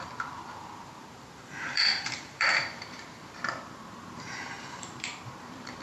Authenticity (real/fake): fake